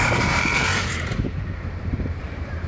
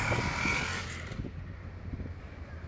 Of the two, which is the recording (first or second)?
second